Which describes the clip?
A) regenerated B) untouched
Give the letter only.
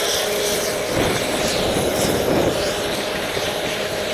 B